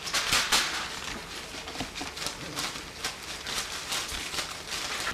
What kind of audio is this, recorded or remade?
recorded